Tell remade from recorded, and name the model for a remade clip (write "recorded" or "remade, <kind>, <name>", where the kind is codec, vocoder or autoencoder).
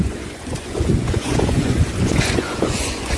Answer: remade, vocoder, Vocos